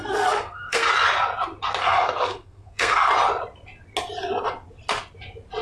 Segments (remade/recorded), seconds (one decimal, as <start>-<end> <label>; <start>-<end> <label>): 0.0-0.9 remade; 0.9-1.8 recorded; 1.8-3.1 remade; 3.1-5.6 recorded